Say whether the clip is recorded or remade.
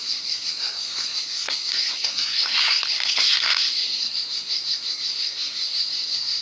remade